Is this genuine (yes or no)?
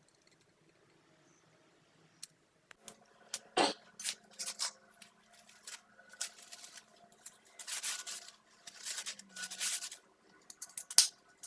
yes